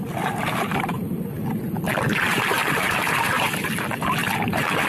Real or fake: fake